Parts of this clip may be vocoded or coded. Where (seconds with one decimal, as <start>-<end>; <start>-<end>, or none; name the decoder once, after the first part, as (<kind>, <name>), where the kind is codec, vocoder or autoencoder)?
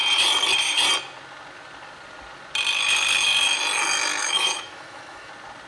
4.2-5.3 (autoencoder, DAC-VAE)